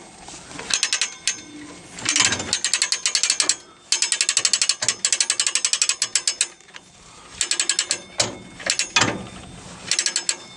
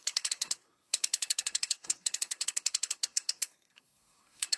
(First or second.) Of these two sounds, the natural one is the first